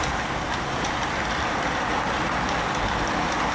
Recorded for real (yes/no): yes